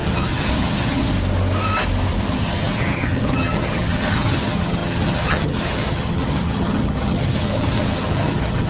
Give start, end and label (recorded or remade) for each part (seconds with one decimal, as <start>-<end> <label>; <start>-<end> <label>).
0.0-1.1 remade; 1.1-2.3 recorded; 2.3-8.7 remade